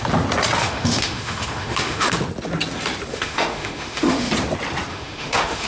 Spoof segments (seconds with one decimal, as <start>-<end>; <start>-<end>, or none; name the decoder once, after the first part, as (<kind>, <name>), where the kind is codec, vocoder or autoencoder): 0.6-2.1 (autoencoder, DAC-VAE); 3.1-4.3; 4.9-5.7